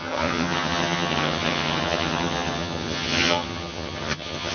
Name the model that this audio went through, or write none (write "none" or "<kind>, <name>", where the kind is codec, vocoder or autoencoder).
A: vocoder, HiFi-GAN